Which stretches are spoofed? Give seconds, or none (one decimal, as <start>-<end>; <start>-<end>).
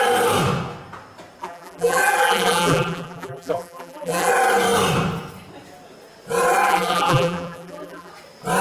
1.4-4.3; 6.6-8.1